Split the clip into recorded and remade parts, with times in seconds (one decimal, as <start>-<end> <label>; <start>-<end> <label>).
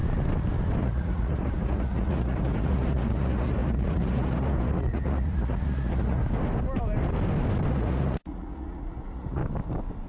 0.0-0.8 recorded; 0.8-6.2 remade; 6.2-7.7 recorded; 7.7-9.4 remade; 9.4-10.1 recorded